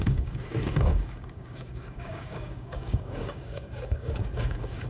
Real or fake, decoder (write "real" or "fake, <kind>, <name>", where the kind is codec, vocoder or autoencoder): fake, codec, DAC